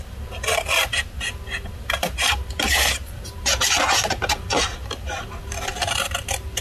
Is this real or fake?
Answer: fake